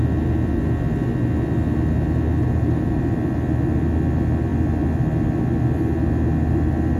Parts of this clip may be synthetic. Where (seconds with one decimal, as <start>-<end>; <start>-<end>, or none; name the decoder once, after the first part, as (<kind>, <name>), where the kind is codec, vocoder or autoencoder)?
2.4-3.0 (vocoder, BigVGAN v2)